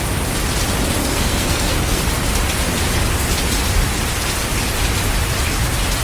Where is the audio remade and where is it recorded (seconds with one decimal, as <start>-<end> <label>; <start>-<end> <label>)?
0.0-1.0 recorded; 1.0-2.0 remade; 2.0-6.0 recorded